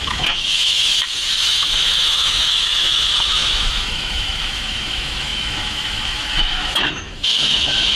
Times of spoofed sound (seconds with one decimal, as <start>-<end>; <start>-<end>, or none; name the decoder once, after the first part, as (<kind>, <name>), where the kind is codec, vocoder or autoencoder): 0.0-8.0 (autoencoder, DAC-VAE)